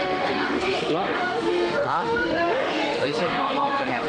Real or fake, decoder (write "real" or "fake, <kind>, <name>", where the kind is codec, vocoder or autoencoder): fake, autoencoder, DAC-VAE